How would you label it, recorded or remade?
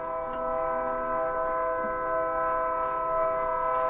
recorded